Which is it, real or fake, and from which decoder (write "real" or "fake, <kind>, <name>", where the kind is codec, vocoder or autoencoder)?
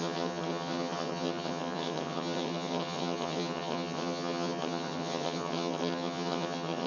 fake, vocoder, HiFi-GAN